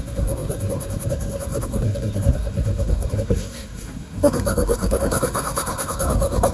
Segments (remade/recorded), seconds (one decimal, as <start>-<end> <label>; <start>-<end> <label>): 0.0-6.5 remade